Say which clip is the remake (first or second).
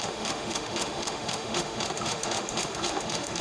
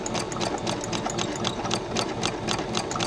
first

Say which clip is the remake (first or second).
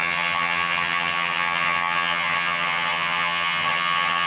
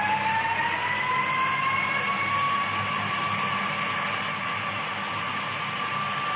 first